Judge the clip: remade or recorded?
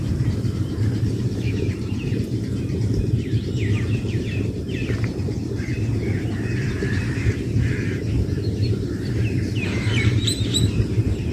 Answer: remade